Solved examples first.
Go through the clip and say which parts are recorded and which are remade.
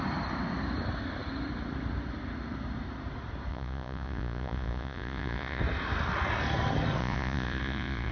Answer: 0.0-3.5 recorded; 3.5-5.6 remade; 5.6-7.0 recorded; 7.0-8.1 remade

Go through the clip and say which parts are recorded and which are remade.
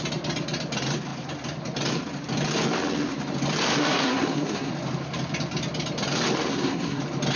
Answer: 0.0-3.8 recorded; 3.8-4.7 remade; 4.7-6.5 recorded; 6.5-7.0 remade; 7.0-7.4 recorded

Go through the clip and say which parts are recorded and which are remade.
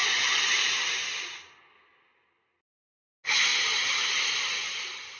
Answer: 0.0-3.5 recorded; 3.5-4.2 remade; 4.2-5.2 recorded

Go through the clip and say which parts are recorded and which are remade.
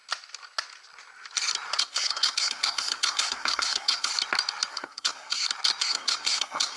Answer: 0.0-1.8 recorded; 1.8-4.1 remade; 4.1-4.7 recorded; 4.7-5.4 remade; 5.4-5.9 recorded; 5.9-6.8 remade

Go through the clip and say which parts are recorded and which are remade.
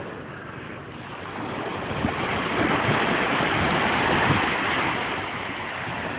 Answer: 0.0-6.2 recorded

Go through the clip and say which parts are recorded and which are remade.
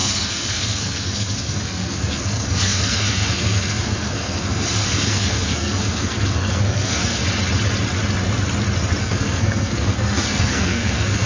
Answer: 0.0-7.2 remade; 7.2-9.0 recorded; 9.0-11.3 remade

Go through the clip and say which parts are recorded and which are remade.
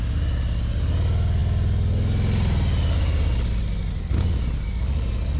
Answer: 0.0-5.4 recorded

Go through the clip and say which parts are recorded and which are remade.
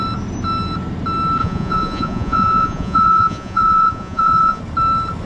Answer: 0.0-1.4 recorded; 1.4-4.6 remade; 4.6-5.3 recorded